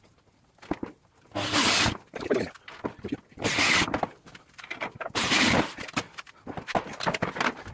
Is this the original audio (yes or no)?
yes